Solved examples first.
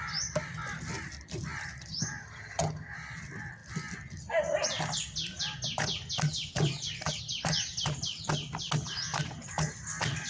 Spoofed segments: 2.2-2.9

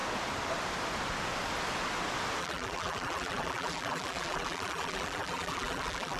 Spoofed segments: 2.4-6.2

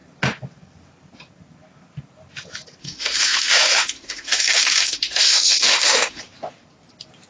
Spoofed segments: 2.8-6.2

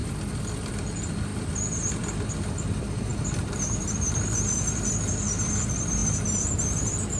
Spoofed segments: 0.0-7.2

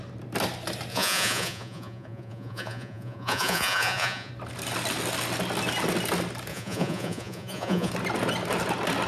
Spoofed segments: 0.9-4.3; 6.5-7.9

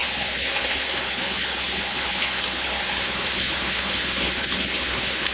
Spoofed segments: 0.0-5.3

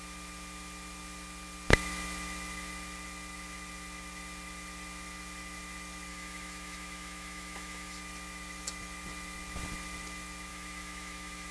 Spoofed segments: 6.1-8.0; 10.5-11.5